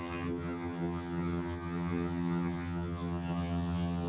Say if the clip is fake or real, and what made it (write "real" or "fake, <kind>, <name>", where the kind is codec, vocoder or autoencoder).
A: fake, vocoder, HiFi-GAN